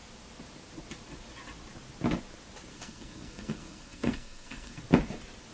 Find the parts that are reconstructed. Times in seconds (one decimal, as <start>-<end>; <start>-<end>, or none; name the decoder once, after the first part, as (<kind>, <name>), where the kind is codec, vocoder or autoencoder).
2.7-4.8 (codec, SNAC)